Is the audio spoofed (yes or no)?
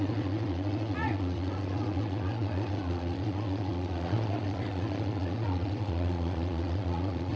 yes